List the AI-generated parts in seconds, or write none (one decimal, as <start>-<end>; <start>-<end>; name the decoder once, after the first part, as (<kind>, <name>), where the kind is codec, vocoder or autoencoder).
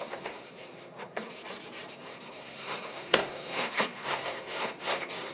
0.0-1.4 (codec, SNAC); 1.9-5.3